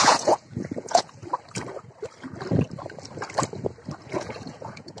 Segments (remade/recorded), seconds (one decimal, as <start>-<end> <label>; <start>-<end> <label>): 0.0-1.2 remade; 1.2-4.0 recorded; 4.0-5.0 remade